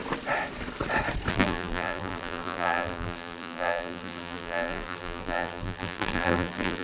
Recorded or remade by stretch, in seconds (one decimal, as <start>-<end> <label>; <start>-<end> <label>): 0.0-1.3 recorded; 1.3-6.8 remade